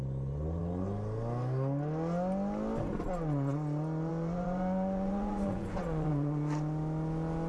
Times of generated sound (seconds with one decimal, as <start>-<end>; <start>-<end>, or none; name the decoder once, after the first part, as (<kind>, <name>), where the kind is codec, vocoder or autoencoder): 4.1-6.1 (vocoder, Vocos)